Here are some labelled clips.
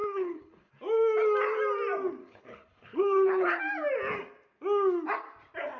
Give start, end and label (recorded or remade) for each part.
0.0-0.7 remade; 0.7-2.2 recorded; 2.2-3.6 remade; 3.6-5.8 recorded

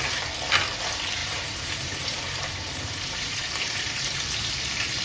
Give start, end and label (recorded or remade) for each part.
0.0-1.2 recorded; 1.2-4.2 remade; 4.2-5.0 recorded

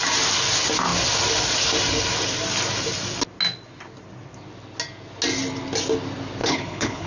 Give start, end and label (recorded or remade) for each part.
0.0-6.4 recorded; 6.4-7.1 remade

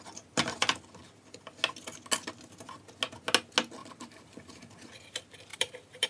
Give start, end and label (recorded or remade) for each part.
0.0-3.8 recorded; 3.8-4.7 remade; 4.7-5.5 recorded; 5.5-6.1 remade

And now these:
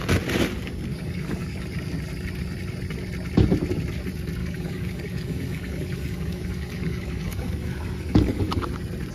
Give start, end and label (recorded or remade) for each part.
0.0-0.9 recorded; 0.9-1.7 remade; 1.7-4.4 recorded; 4.4-8.7 remade; 8.7-9.1 recorded

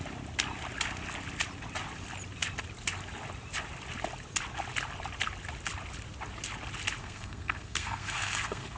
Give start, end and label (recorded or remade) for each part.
0.0-7.0 recorded; 7.0-8.8 remade